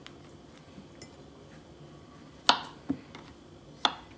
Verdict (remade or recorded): recorded